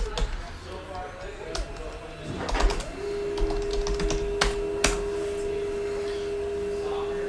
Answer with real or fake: real